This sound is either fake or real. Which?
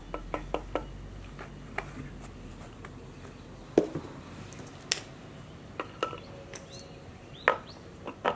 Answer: real